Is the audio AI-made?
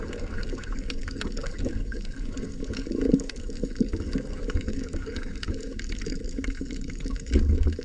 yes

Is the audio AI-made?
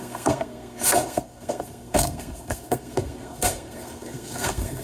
yes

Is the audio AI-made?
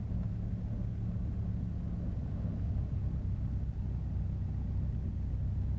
no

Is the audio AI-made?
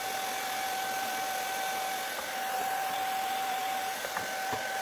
yes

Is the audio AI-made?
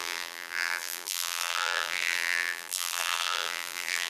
yes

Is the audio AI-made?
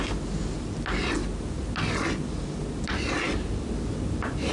no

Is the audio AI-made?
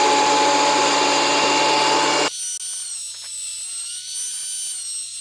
no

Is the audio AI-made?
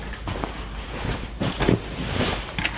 no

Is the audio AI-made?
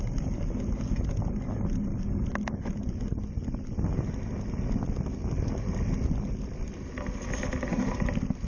no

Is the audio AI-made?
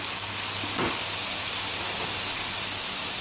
no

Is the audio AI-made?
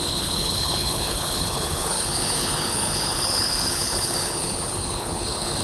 yes